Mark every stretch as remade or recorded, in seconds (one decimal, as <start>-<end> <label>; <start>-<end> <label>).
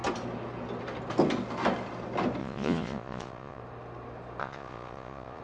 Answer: 0.0-2.4 recorded; 2.4-3.6 remade; 3.6-4.4 recorded; 4.4-5.4 remade